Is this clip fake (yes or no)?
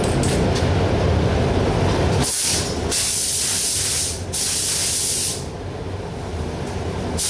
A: no